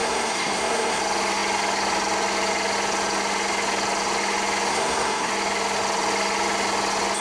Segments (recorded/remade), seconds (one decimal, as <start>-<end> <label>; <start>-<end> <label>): 0.0-1.0 remade; 1.0-4.7 recorded; 4.7-5.3 remade; 5.3-7.2 recorded